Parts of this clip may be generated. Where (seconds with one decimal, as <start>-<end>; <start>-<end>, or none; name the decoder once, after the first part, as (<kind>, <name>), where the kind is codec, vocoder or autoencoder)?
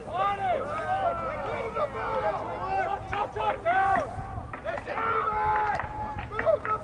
none